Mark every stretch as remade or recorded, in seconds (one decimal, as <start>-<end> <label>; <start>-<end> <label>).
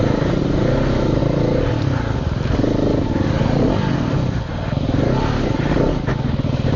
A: 0.0-6.8 recorded